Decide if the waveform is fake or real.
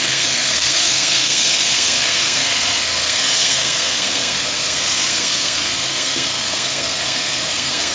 fake